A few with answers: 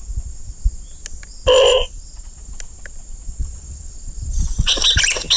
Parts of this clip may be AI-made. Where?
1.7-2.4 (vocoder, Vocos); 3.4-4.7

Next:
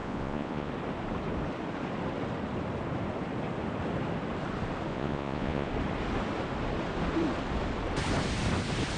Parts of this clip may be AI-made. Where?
0.0-0.7 (vocoder, Vocos); 4.9-5.7

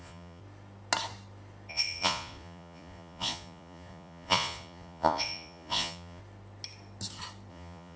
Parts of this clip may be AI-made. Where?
0.0-0.4 (vocoder, Vocos); 1.7-6.2; 7.5-8.0

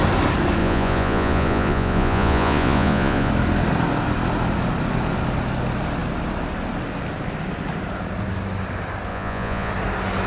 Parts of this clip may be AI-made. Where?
0.6-3.3 (vocoder, Vocos); 9.1-9.7